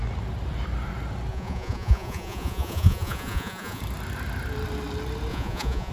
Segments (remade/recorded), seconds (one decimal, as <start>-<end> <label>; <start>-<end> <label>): 0.0-1.3 recorded; 1.3-3.8 remade; 3.8-5.3 recorded; 5.3-5.9 remade